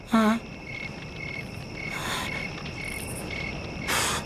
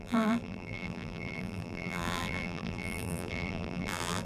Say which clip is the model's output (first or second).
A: second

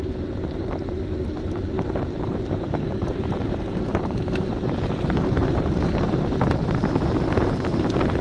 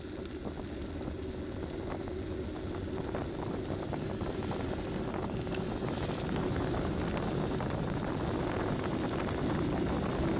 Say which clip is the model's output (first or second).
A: first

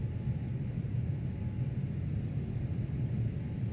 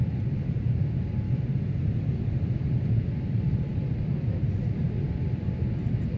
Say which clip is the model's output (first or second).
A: second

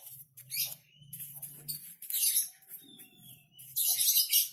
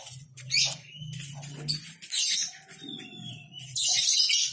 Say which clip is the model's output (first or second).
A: first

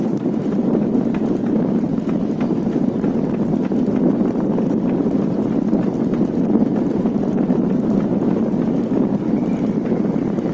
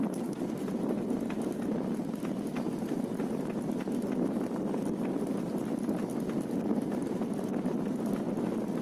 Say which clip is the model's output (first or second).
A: first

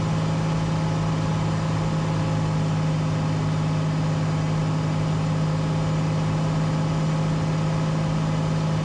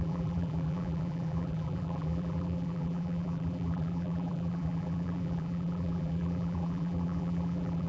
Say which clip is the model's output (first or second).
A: second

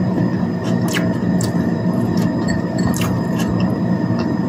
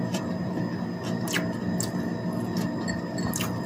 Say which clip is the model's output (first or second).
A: first